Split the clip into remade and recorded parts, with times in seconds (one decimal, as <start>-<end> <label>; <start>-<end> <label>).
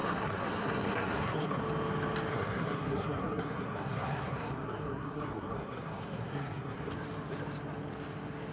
0.0-1.6 remade; 1.6-2.3 recorded; 2.3-6.9 remade; 6.9-8.5 recorded